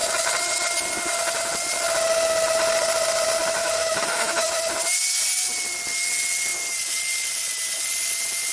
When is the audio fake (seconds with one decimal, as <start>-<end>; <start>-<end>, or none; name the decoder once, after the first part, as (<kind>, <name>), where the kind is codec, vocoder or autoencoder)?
3.6-4.5 (autoencoder, DAC-VAE)

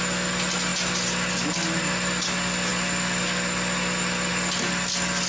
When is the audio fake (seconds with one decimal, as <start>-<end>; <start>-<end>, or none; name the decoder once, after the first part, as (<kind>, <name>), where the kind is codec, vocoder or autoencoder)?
none